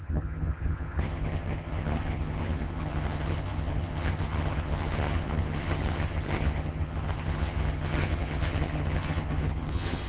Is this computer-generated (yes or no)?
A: yes